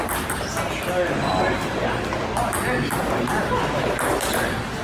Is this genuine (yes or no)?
yes